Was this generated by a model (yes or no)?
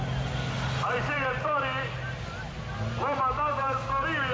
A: no